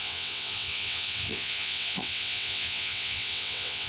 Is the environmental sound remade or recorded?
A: remade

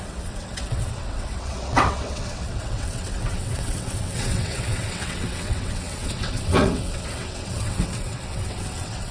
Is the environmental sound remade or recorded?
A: remade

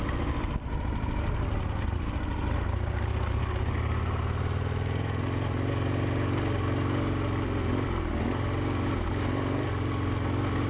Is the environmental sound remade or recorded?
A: recorded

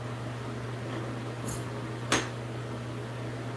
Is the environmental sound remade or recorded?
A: recorded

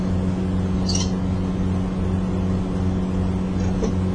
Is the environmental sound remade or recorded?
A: recorded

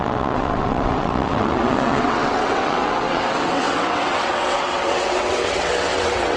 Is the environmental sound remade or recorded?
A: remade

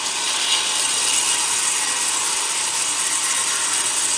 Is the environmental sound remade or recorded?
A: recorded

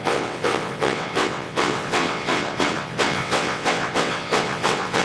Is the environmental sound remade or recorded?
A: remade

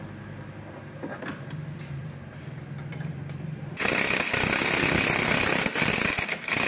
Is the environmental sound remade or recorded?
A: recorded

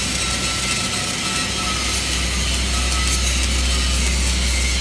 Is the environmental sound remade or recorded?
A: recorded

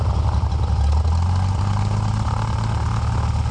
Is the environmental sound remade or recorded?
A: recorded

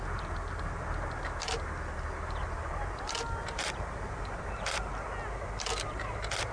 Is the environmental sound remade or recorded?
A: recorded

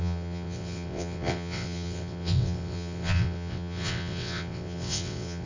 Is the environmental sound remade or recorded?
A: remade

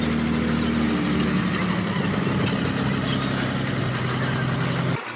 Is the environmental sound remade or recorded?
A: recorded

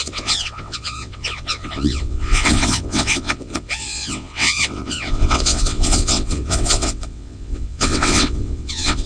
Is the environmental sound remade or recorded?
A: remade